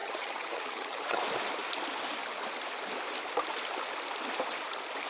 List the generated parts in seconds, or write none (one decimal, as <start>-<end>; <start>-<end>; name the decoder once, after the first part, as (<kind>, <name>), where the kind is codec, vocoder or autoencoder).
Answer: 0.0-1.2 (vocoder, HiFi-GAN)